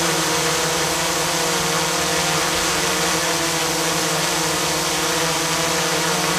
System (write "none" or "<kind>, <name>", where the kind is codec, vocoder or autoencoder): none